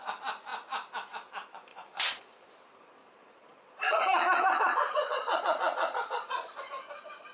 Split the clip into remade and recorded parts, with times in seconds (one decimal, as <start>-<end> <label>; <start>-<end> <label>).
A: 0.0-1.7 recorded; 1.7-2.5 remade; 2.5-3.0 recorded; 3.0-6.7 remade; 6.7-7.3 recorded

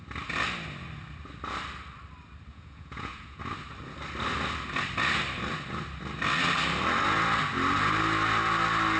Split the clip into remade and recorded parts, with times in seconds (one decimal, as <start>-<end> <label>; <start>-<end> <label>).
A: 0.0-2.5 recorded; 2.5-3.4 remade; 3.4-9.0 recorded